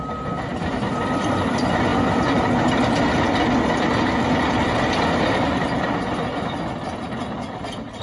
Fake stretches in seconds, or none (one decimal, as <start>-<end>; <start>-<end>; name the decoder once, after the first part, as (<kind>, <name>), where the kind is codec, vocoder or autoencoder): none